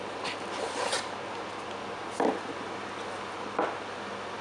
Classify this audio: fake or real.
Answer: real